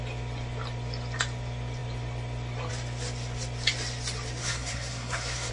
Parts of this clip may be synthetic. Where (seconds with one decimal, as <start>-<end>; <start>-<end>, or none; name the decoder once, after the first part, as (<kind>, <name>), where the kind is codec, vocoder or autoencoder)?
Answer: 4.4-5.5 (codec, SNAC)